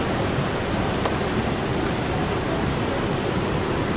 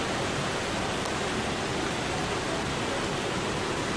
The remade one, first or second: first